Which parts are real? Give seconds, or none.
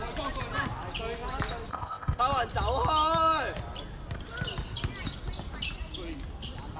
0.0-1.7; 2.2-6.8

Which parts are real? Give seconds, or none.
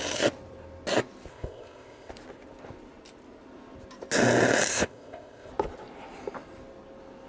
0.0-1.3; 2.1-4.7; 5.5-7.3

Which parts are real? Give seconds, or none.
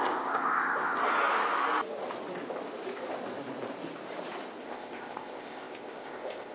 1.0-4.6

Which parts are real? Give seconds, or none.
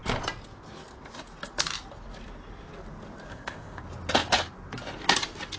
0.0-3.3; 3.8-5.6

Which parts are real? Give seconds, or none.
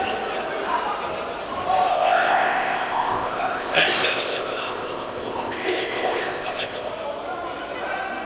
0.0-1.9; 6.9-8.3